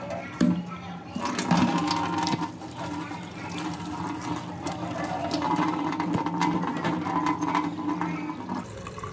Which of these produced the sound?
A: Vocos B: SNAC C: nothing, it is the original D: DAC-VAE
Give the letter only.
C